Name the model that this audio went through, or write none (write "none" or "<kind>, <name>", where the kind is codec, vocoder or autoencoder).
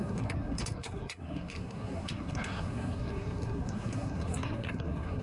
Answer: codec, SNAC